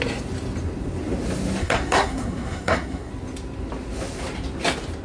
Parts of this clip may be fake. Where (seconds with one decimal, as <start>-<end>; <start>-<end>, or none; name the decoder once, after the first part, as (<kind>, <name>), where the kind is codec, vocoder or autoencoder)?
1.6-3.1 (codec, SNAC)